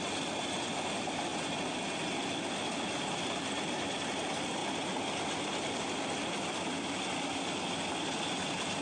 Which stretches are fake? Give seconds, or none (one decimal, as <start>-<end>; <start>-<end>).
none